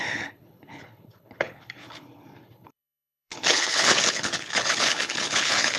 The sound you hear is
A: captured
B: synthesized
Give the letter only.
B